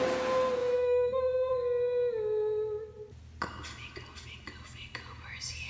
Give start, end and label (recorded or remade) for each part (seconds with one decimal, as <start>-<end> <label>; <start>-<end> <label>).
0.0-0.6 recorded; 0.6-1.5 remade; 1.5-5.7 recorded